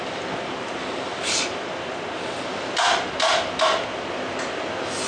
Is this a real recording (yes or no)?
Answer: yes